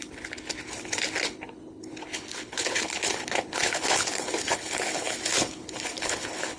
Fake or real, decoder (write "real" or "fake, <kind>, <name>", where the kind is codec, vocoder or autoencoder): fake, codec, HILCodec